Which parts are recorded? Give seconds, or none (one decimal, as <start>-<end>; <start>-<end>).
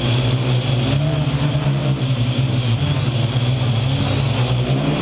0.0-1.8; 3.4-5.0